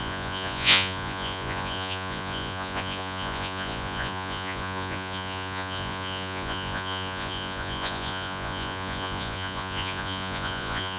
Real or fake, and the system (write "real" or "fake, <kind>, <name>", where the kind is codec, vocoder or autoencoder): fake, vocoder, Vocos